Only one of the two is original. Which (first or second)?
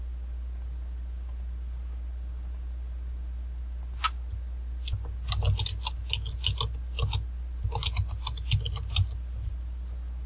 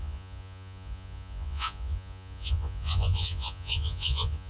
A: first